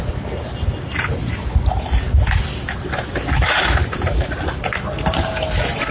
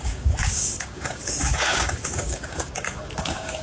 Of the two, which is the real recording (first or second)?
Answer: first